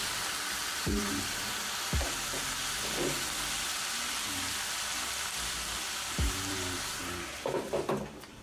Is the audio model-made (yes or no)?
yes